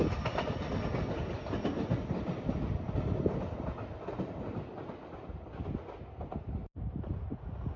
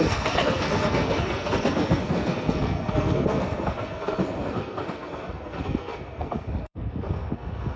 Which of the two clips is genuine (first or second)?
first